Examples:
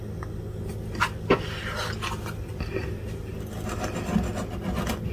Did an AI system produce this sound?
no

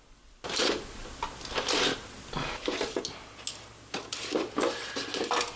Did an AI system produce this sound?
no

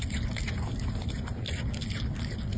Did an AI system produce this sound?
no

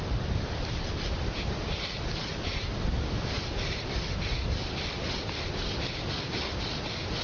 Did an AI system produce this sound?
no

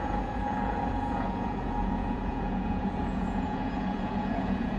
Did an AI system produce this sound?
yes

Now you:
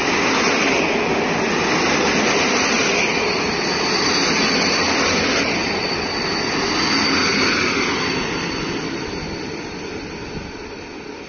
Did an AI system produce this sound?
no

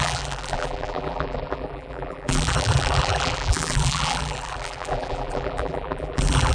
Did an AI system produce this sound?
yes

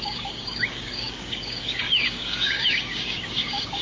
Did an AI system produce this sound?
yes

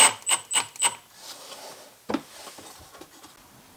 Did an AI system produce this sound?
no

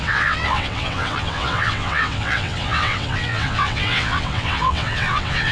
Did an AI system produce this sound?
yes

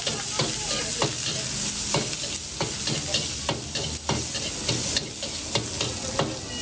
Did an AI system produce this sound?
no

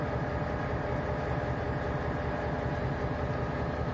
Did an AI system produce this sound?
no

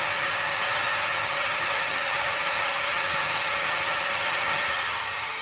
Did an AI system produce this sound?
yes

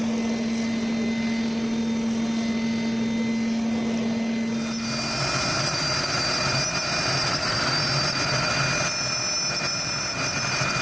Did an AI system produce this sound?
no